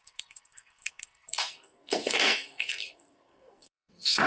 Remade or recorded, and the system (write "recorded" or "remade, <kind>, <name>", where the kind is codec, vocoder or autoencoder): remade, codec, SNAC